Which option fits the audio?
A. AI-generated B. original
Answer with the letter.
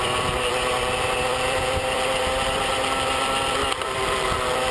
A